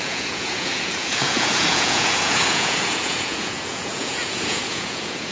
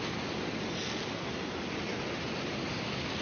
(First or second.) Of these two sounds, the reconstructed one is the first